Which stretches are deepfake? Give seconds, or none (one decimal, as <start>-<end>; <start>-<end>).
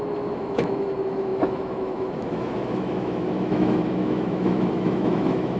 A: 0.0-5.6